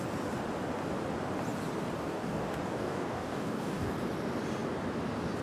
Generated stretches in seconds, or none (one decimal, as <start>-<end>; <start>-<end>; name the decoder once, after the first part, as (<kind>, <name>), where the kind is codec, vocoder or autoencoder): 2.1-3.9 (codec, DAC)